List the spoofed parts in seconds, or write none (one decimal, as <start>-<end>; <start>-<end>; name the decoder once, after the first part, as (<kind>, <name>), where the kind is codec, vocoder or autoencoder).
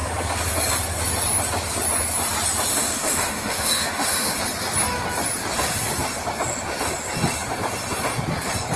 2.7-4.4 (autoencoder, DAC-VAE)